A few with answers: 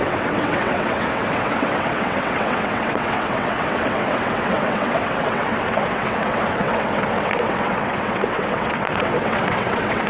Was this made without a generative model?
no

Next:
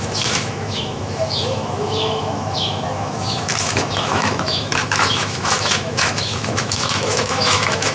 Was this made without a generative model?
no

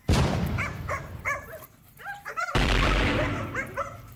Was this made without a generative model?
no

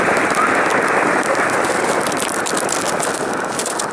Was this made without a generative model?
yes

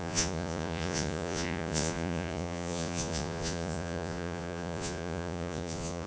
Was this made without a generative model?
no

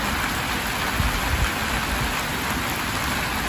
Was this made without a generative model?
yes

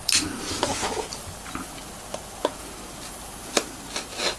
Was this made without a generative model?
yes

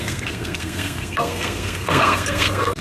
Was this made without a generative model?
no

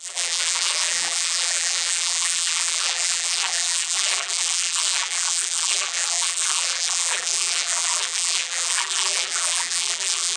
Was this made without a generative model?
no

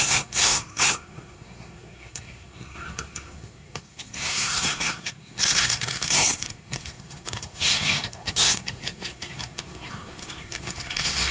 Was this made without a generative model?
no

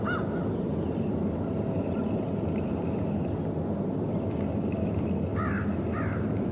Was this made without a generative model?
yes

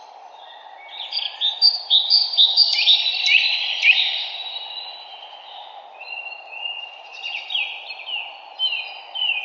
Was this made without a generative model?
no